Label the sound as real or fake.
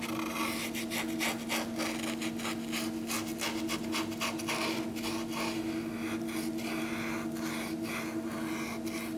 real